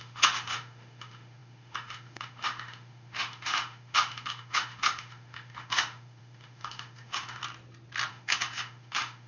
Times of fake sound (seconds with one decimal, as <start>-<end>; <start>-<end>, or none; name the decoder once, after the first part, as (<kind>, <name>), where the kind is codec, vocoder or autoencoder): 0.0-7.4 (autoencoder, DAC-VAE); 8.1-9.3